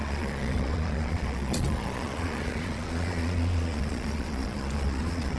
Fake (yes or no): yes